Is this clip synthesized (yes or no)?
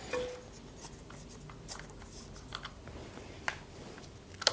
no